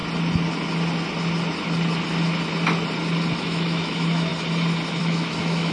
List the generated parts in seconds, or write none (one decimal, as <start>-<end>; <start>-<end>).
3.4-4.3; 5.0-5.7